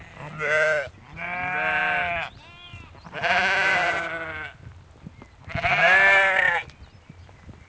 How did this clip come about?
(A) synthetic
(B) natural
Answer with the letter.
B